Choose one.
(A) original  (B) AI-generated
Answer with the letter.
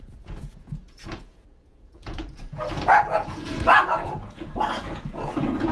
B